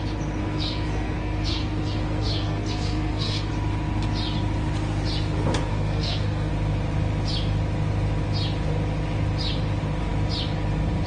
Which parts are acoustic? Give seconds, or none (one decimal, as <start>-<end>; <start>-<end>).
0.0-0.4; 3.5-5.7; 6.5-11.1